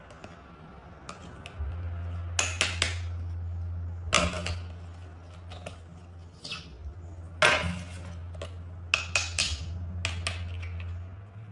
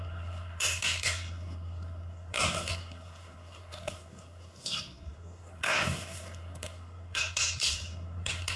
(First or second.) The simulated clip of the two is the second